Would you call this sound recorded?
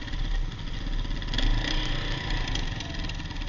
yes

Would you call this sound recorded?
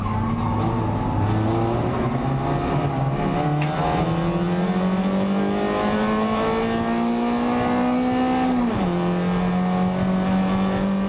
yes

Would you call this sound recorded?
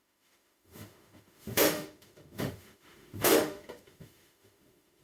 no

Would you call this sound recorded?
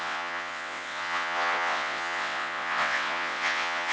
no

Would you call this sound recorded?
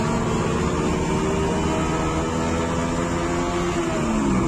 yes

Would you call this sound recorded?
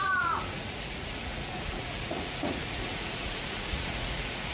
no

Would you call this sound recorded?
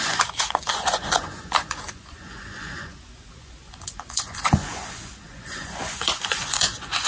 no